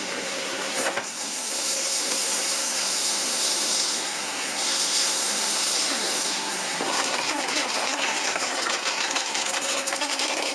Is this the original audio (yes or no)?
no